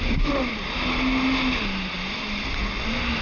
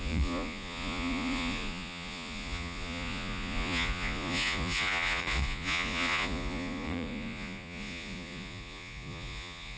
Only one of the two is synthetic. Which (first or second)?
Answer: second